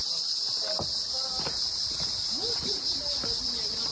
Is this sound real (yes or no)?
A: yes